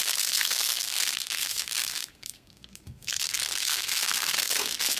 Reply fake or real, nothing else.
fake